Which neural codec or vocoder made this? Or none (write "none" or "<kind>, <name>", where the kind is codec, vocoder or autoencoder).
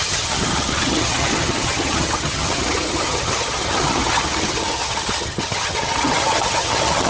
vocoder, HiFi-GAN